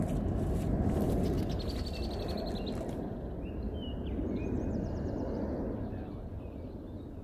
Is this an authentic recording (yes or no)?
yes